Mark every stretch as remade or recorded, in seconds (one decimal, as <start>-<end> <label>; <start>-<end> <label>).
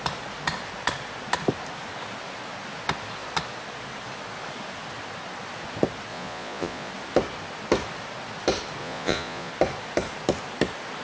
0.0-6.1 recorded; 6.1-6.9 remade; 6.9-8.8 recorded; 8.8-9.5 remade; 9.5-11.0 recorded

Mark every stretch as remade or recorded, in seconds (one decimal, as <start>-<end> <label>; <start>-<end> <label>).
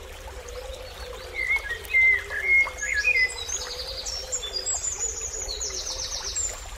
0.0-0.7 remade; 0.7-4.6 recorded; 4.6-6.8 remade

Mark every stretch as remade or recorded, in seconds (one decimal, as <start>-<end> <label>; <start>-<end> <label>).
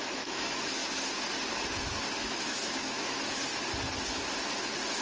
0.0-0.8 remade; 0.8-2.2 recorded; 2.2-3.4 remade; 3.4-4.6 recorded; 4.6-5.0 remade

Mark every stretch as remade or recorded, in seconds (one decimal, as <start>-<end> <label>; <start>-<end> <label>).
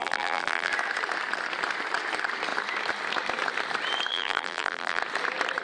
0.0-0.7 remade; 0.7-4.1 recorded; 4.1-5.0 remade; 5.0-5.6 recorded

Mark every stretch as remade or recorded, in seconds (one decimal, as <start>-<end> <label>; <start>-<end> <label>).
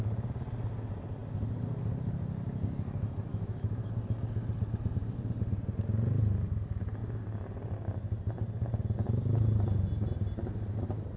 0.0-3.3 recorded; 3.3-3.9 remade; 3.9-11.2 recorded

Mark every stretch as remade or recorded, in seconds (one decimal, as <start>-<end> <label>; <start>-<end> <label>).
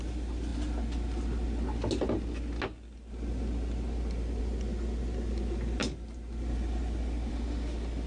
0.0-8.1 recorded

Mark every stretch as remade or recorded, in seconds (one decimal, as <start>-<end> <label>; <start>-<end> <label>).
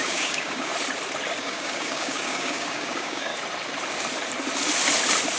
0.0-0.7 remade; 0.7-1.4 recorded; 1.4-3.3 remade; 3.3-5.4 recorded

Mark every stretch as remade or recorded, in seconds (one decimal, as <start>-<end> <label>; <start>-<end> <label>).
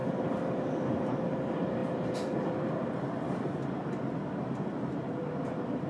0.0-3.6 remade; 3.6-4.3 recorded; 4.3-5.9 remade